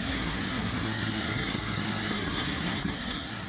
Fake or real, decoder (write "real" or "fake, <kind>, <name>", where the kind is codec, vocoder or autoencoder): fake, codec, SNAC